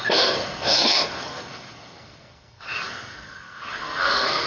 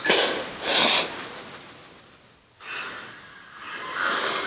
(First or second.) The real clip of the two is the second